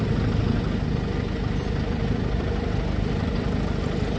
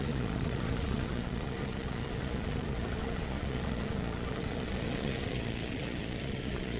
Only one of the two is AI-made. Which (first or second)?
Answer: second